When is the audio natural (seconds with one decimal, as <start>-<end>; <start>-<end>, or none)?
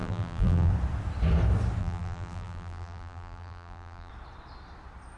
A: 0.7-1.8; 4.1-5.2